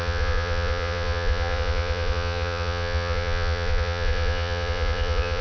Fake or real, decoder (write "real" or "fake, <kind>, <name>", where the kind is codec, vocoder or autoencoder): fake, vocoder, Vocos